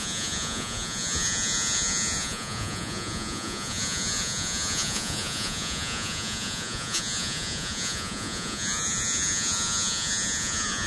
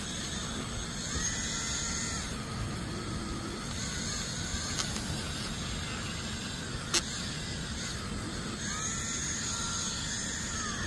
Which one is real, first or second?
second